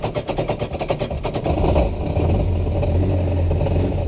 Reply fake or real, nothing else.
real